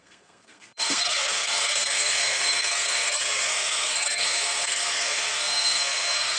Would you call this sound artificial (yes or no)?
yes